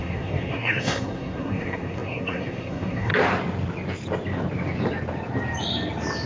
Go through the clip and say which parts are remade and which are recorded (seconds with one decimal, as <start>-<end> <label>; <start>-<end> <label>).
0.0-3.1 remade; 3.1-6.3 recorded